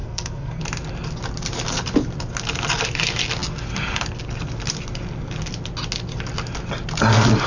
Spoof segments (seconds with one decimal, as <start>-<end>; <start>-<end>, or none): 0.0-0.6